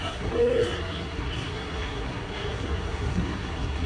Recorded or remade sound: remade